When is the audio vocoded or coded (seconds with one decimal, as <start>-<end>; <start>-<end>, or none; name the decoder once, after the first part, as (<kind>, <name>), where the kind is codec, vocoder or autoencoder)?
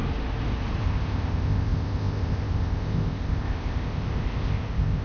0.8-5.0 (codec, ZipCodec)